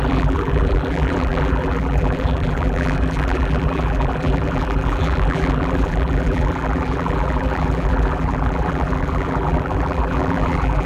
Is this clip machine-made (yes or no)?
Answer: yes